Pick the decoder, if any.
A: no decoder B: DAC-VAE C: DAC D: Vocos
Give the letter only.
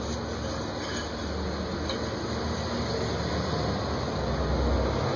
A